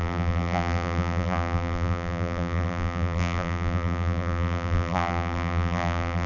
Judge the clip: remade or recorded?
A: remade